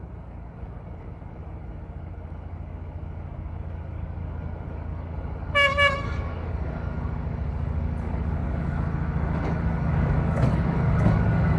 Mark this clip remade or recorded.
remade